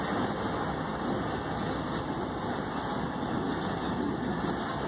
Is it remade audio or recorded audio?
recorded